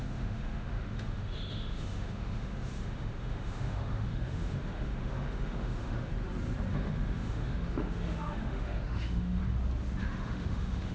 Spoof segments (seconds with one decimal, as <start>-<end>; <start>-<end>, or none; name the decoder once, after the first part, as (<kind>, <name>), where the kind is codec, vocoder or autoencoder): 0.0-6.1 (autoencoder, DAC-VAE); 6.7-9.4; 10.0-10.9

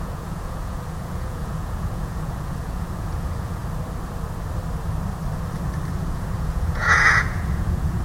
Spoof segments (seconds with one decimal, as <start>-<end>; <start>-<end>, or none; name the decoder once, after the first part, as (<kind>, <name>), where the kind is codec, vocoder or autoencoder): 0.0-3.6 (vocoder, Vocos); 5.9-8.0

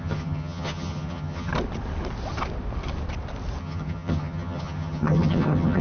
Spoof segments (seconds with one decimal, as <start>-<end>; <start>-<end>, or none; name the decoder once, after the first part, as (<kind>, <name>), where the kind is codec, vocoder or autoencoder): 0.0-1.5 (vocoder, HiFi-GAN); 3.6-5.8